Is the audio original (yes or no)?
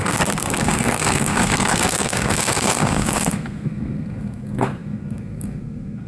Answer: no